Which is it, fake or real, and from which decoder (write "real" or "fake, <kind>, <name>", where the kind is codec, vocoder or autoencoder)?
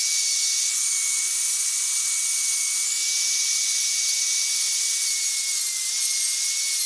real